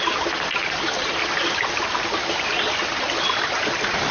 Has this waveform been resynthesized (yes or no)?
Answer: no